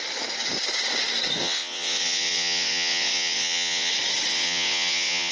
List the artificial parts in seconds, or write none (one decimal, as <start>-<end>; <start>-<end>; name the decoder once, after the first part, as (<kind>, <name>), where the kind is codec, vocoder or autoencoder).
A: 1.4-3.9 (vocoder, WaveNeXt); 4.3-5.3